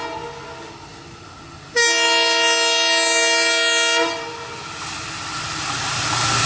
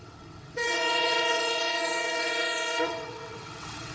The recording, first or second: first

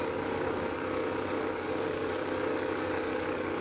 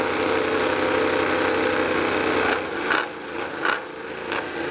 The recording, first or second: second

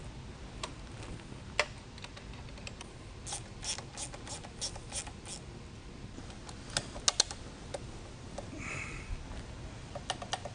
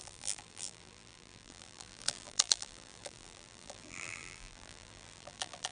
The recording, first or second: first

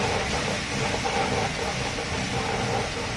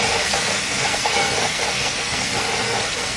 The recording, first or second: first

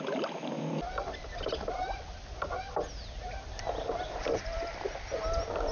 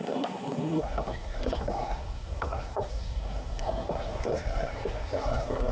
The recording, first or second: first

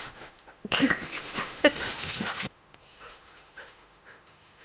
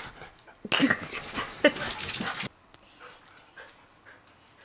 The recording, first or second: second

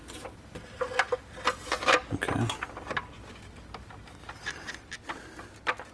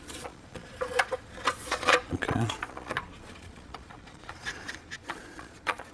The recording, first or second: first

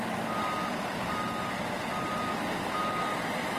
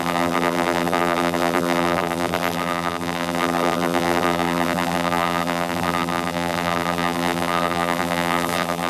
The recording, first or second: first